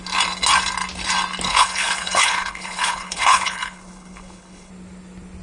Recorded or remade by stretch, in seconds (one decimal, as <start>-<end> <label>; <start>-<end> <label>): 0.0-1.5 recorded; 1.5-4.7 remade; 4.7-5.4 recorded